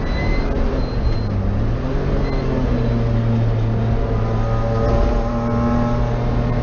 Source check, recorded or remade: recorded